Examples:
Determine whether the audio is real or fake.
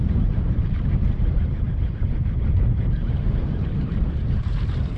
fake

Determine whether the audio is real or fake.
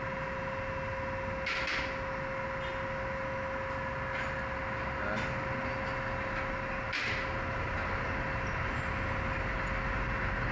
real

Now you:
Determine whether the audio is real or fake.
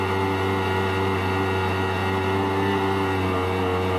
real